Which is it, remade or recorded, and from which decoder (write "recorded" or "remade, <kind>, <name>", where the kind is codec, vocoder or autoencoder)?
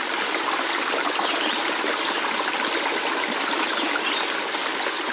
recorded